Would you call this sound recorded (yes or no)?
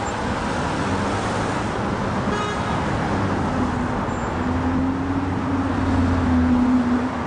yes